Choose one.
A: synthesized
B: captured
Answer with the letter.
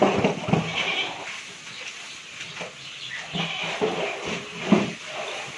B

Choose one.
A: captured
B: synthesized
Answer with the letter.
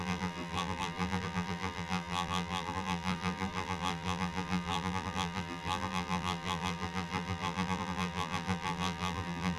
B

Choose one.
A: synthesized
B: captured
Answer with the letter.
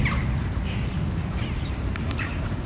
A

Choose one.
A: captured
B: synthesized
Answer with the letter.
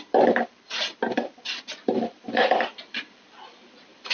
B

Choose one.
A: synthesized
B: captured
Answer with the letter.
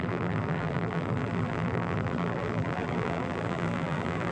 A